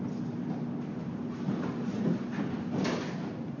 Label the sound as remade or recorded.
recorded